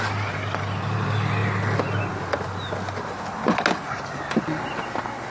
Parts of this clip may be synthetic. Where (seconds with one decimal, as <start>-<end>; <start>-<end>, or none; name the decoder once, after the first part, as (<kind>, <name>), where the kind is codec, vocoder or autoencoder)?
none